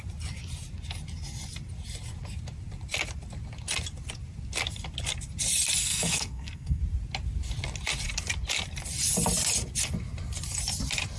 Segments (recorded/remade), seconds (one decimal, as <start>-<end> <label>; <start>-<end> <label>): 0.0-5.8 recorded; 5.8-6.8 remade; 6.8-11.2 recorded